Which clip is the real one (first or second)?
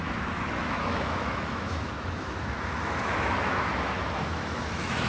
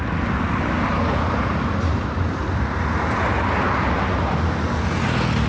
second